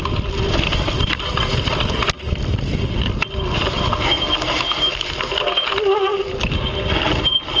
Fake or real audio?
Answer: real